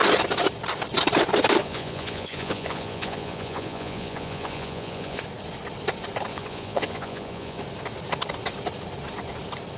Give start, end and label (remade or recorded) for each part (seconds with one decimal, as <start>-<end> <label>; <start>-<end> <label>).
0.0-1.6 recorded; 1.6-5.2 remade; 5.2-6.3 recorded; 6.3-7.6 remade; 7.6-9.8 recorded